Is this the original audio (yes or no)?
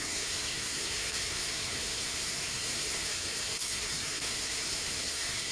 no